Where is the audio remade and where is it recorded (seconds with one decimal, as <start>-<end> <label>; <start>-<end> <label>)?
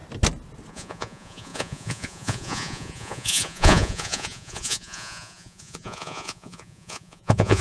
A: 0.0-0.7 recorded; 0.7-7.6 remade